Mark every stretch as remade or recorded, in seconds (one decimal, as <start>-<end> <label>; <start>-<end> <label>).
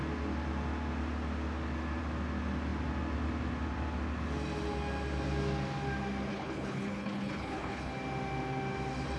0.0-6.3 recorded; 6.3-7.9 remade; 7.9-9.2 recorded